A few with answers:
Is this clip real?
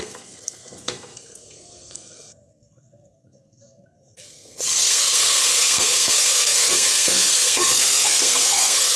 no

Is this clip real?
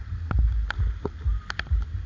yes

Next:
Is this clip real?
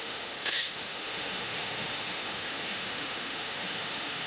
no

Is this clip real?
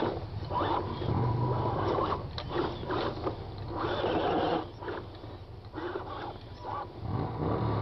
yes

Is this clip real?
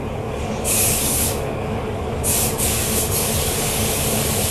no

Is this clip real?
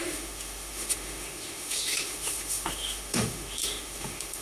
no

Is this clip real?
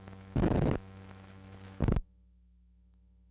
no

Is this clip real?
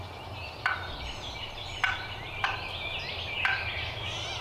yes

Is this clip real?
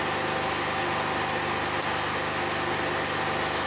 yes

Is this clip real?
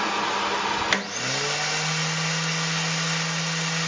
yes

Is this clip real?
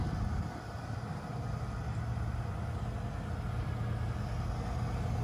yes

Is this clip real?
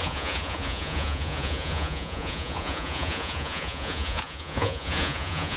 no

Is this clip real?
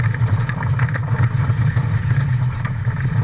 no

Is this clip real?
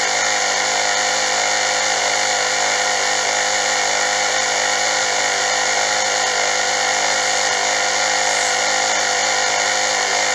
yes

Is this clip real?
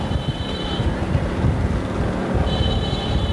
yes